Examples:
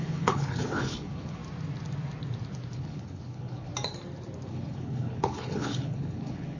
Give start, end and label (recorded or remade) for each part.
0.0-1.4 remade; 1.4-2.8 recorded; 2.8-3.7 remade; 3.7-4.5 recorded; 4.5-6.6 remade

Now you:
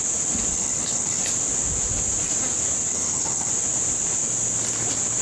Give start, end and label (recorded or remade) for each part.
0.0-0.5 recorded; 0.5-1.2 remade; 1.2-2.9 recorded; 2.9-3.5 remade; 3.5-5.2 recorded

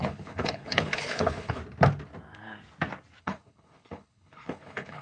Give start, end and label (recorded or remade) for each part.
0.0-1.6 remade; 1.6-3.2 recorded; 3.2-5.0 remade